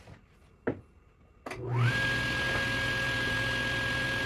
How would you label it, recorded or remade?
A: recorded